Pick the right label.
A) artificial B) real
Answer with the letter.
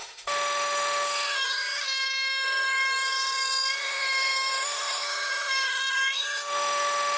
A